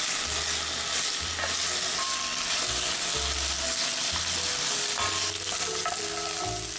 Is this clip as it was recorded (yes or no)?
yes